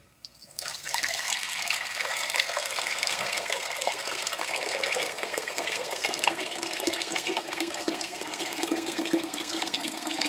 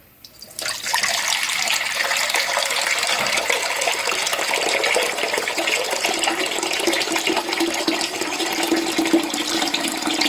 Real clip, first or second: second